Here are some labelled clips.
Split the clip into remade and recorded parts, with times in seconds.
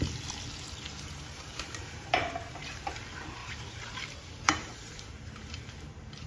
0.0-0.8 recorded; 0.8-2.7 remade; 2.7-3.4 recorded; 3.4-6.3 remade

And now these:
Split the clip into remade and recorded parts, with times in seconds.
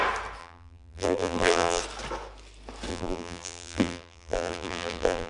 0.0-0.4 recorded; 0.4-1.8 remade; 1.8-2.9 recorded; 2.9-5.3 remade